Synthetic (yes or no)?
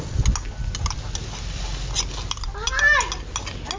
no